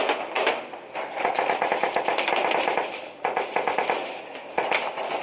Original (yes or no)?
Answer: yes